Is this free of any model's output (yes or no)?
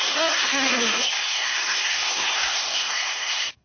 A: no